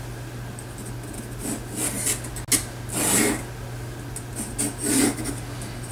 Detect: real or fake real